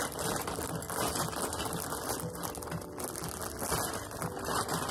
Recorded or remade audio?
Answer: recorded